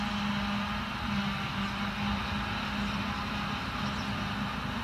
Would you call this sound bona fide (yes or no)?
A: yes